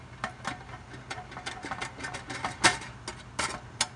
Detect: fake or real real